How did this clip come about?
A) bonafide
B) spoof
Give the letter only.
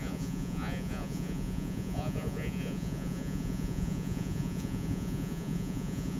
B